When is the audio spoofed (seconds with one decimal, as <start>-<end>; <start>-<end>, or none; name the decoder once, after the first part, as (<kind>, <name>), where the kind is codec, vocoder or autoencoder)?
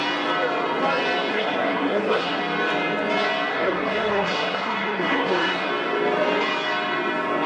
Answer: 1.3-2.4 (codec, SNAC); 3.5-5.7